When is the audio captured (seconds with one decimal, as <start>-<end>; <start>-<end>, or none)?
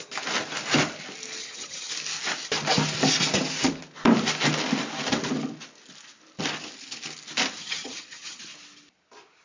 0.0-1.4; 1.9-7.6; 8.4-9.4